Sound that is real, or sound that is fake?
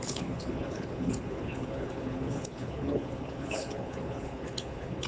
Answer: fake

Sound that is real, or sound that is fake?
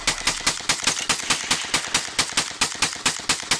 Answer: real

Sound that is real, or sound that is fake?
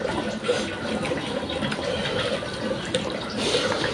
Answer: real